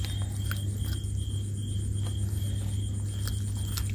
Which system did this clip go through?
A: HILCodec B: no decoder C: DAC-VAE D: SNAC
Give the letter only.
B